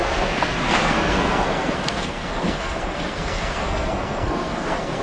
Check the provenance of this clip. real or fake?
fake